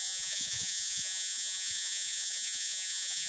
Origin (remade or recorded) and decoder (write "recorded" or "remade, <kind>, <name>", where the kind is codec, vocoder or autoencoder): remade, vocoder, Vocos